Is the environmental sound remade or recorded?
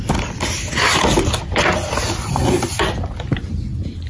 recorded